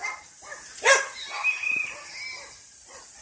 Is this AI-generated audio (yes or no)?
no